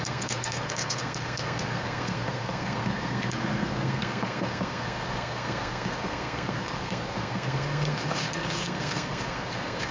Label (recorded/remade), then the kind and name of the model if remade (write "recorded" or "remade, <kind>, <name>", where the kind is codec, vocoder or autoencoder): remade, codec, SNAC